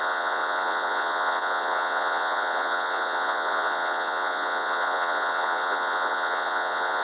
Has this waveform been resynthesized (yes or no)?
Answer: yes